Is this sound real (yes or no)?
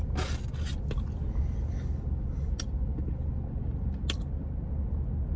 yes